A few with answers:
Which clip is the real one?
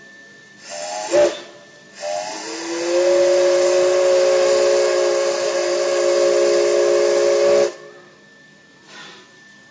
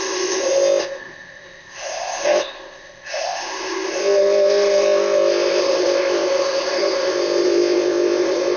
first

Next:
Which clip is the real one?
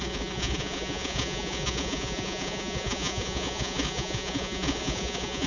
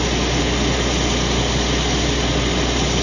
second